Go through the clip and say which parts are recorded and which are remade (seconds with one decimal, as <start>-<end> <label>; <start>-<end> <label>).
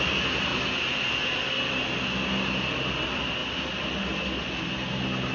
0.0-5.3 recorded